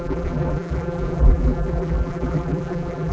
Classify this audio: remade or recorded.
remade